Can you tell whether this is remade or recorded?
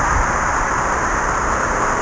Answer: remade